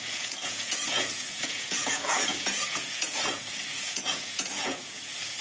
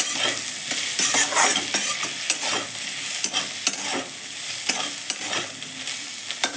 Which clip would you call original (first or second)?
second